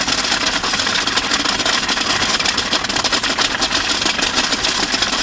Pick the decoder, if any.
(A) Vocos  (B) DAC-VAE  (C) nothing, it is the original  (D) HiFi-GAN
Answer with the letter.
C